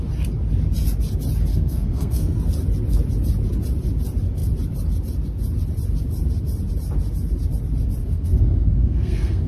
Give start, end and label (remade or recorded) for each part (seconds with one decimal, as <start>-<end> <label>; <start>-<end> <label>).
0.0-1.5 recorded; 1.5-2.4 remade; 2.4-8.0 recorded; 8.0-9.5 remade